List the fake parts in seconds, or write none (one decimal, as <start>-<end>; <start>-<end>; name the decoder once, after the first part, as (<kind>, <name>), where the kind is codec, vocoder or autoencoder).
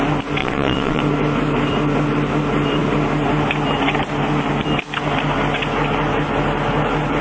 0.4-1.0 (vocoder, Vocos)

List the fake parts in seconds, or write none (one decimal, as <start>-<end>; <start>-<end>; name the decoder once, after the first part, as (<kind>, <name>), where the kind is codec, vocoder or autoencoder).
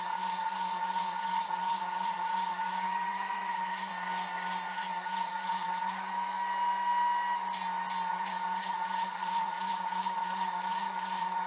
0.0-3.9 (vocoder, HiFi-GAN); 4.7-6.1; 8.1-11.5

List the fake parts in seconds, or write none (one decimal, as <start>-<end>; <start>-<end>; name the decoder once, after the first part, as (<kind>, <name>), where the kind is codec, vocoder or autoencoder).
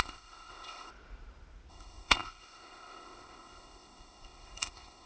0.0-0.9 (codec, ZipCodec); 1.7-5.1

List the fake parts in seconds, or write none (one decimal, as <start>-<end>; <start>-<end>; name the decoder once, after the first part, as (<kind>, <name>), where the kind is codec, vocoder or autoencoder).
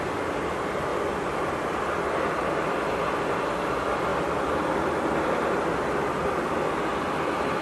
4.1-6.2 (vocoder, BigVGAN v2)